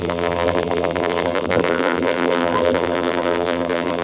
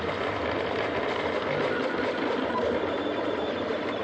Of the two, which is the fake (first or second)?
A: first